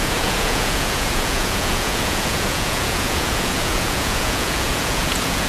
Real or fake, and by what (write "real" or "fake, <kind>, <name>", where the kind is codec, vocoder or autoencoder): fake, vocoder, Vocos